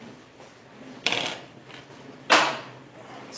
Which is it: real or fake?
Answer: fake